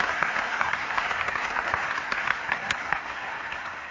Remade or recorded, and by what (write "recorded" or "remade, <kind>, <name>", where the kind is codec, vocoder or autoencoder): remade, codec, SNAC